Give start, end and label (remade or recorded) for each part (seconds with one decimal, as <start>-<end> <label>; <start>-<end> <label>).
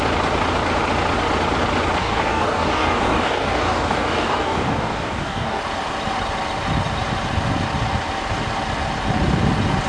0.0-2.0 recorded; 2.0-5.6 remade; 5.6-9.9 recorded